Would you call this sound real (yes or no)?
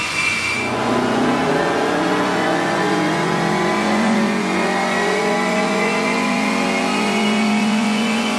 no